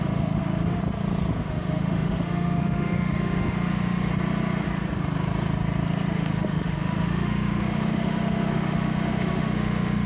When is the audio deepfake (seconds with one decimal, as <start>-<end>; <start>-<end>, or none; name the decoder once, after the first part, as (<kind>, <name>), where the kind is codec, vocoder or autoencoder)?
0.0-0.8 (autoencoder, DAC-VAE); 1.4-4.1; 6.1-10.1